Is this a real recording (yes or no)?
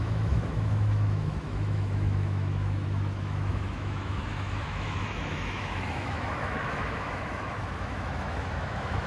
no